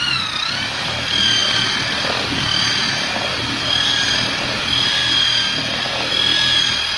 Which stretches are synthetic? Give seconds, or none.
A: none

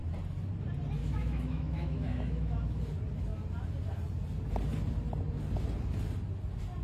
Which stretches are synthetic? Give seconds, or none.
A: 1.0-2.8 (autoencoder, DAC-VAE)